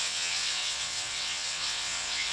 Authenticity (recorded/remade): remade